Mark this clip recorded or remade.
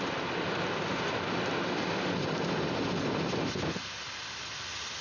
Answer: recorded